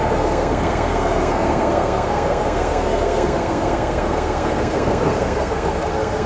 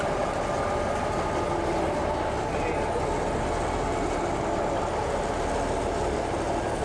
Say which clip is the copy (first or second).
first